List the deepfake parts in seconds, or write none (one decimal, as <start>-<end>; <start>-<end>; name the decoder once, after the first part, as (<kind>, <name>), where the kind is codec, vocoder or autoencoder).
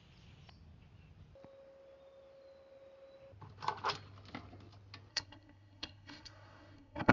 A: 5.1-7.1 (codec, SNAC)